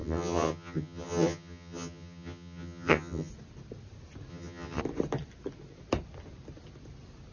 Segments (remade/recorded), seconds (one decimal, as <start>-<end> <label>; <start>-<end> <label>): 0.0-3.3 remade; 3.3-4.3 recorded; 4.3-4.8 remade; 4.8-7.3 recorded